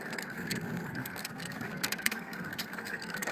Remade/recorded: remade